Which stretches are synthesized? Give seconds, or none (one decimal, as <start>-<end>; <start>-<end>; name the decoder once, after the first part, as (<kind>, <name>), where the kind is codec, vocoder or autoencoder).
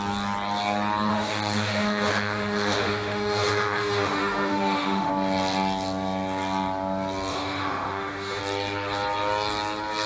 1.1-5.1 (autoencoder, DAC-VAE); 7.3-8.4